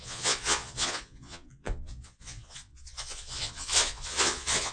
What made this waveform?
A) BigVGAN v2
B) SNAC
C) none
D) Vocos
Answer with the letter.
D